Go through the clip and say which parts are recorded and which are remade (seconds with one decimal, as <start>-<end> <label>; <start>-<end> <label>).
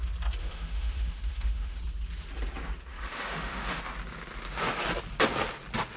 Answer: 0.0-0.4 recorded; 0.4-1.8 remade; 1.8-2.9 recorded; 2.9-3.8 remade; 3.8-6.0 recorded